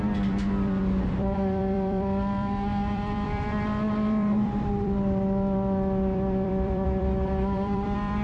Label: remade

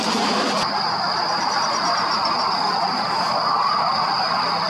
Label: recorded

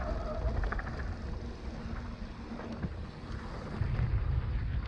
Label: recorded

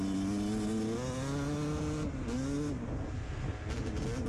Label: recorded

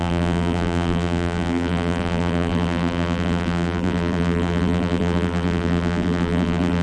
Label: remade